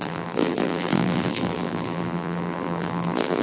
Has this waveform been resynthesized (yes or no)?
yes